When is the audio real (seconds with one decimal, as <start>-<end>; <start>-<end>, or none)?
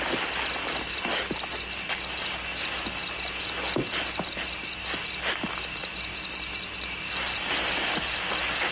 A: 0.0-8.7